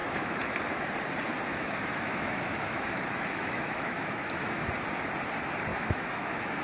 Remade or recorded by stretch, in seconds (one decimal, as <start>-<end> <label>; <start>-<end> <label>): 0.0-0.5 remade; 0.5-1.5 recorded; 1.5-4.7 remade; 4.7-5.7 recorded; 5.7-6.6 remade